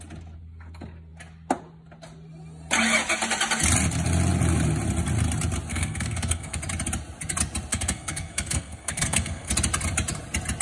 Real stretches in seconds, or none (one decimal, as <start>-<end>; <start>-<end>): 0.0-5.7; 6.6-7.7; 9.5-10.6